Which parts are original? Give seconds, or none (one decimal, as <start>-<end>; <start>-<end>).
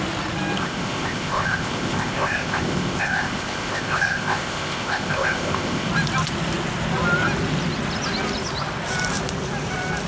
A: 0.0-0.6; 5.9-10.1